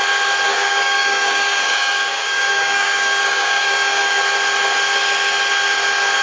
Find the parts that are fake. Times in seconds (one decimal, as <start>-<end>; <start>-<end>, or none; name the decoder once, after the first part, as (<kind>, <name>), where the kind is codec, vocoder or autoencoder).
0.5-4.2 (codec, DAC)

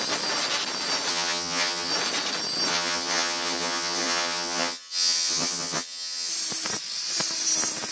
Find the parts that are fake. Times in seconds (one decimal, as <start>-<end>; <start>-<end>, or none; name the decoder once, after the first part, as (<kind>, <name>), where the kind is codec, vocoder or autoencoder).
1.1-1.9 (vocoder, HiFi-GAN); 2.7-6.3

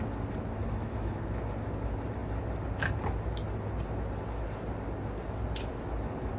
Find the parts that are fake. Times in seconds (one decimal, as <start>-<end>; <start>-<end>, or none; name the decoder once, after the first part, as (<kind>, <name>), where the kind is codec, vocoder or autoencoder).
0.6-1.2 (autoencoder, DAC-VAE)

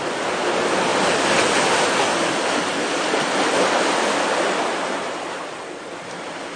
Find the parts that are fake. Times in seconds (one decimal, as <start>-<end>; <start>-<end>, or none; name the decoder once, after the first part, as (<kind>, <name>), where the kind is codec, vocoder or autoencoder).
none

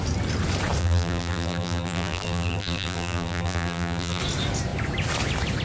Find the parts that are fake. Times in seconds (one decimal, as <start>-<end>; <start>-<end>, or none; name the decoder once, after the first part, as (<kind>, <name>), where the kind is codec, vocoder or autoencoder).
0.8-4.2 (vocoder, BigVGAN v2)

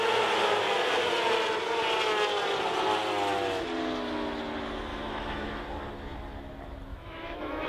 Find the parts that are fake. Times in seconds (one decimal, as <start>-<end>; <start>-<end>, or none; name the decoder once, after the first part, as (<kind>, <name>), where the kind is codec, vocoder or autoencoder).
4.9-5.6 (autoencoder, DAC-VAE); 6.9-7.7

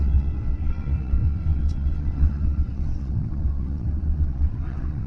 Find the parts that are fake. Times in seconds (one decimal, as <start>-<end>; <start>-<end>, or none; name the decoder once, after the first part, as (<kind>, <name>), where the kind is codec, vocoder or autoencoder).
0.0-5.1 (vocoder, WaveNeXt)

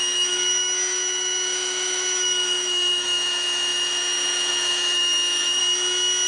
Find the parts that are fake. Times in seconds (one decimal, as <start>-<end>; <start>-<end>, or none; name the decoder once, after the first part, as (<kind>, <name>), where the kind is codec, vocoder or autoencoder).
0.0-5.6 (autoencoder, DAC-VAE)